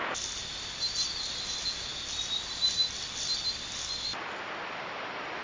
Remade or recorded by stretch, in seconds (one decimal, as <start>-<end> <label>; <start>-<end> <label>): 0.0-4.1 recorded; 4.1-5.0 remade; 5.0-5.4 recorded